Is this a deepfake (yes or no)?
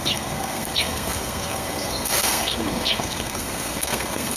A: yes